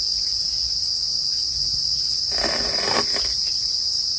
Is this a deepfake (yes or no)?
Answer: no